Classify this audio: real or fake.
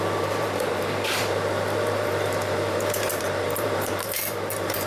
fake